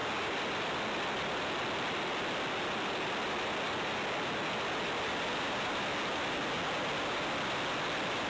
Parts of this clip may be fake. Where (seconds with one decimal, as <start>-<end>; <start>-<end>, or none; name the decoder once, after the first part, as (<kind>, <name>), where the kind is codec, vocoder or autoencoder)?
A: none